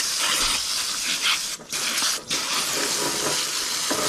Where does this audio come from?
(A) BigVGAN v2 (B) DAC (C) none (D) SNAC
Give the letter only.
C